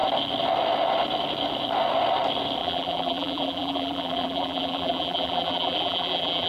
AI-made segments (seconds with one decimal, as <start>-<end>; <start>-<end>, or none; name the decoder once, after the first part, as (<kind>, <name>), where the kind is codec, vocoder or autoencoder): 2.6-6.5 (vocoder, BigVGAN v2)